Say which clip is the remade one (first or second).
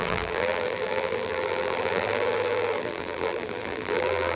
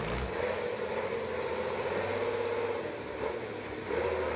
first